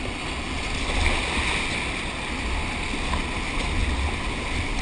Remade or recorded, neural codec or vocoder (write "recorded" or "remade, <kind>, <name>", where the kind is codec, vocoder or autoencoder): recorded